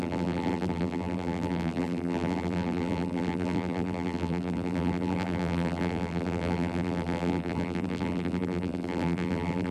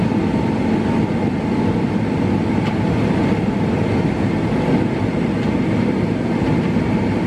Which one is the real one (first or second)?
second